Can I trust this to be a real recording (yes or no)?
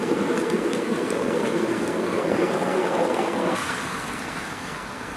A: no